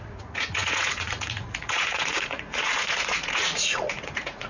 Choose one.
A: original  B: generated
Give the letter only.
B